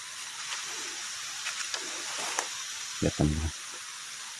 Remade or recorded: recorded